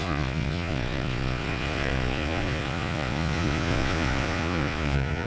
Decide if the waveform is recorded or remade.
remade